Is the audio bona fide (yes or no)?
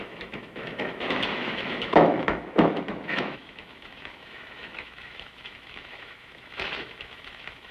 no